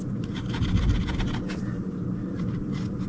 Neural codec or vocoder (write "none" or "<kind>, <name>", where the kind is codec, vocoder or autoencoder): none